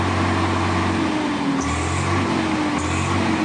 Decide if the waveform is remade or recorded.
recorded